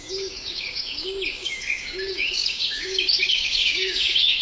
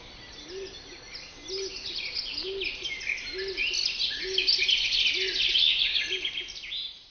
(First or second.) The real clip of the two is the second